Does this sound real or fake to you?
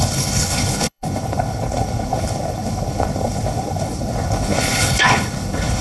fake